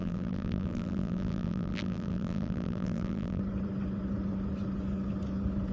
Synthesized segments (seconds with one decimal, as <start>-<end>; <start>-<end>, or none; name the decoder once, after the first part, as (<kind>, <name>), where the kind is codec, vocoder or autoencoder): 0.0-3.4 (vocoder, BigVGAN v2)